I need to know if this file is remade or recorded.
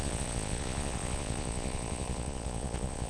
remade